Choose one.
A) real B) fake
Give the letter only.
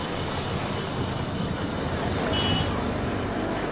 A